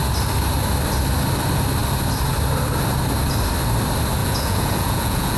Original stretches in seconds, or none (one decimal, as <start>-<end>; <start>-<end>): 0.0-4.2